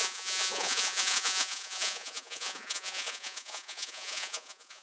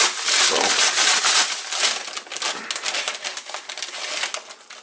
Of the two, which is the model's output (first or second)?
first